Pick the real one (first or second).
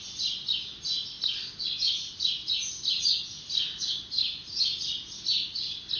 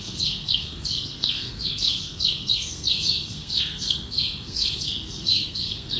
first